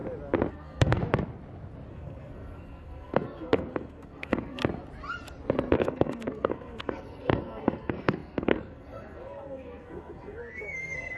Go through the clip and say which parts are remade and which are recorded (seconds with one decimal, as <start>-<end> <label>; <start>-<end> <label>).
0.0-0.5 recorded; 0.5-1.0 remade; 1.0-1.9 recorded; 1.9-4.6 remade; 4.6-5.7 recorded; 5.7-11.2 remade

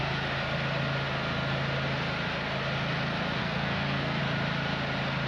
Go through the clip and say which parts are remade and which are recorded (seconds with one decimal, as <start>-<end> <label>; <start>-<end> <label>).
0.0-3.4 recorded; 3.4-4.2 remade; 4.2-5.3 recorded

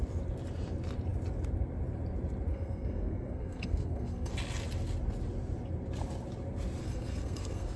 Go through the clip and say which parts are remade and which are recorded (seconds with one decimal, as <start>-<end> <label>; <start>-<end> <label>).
0.0-2.5 recorded; 2.5-4.3 remade; 4.3-6.8 recorded; 6.8-7.8 remade